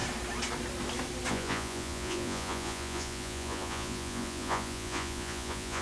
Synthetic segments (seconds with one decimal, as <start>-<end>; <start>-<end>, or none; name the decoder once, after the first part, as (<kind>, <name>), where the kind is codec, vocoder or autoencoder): 1.3-5.8 (vocoder, Vocos)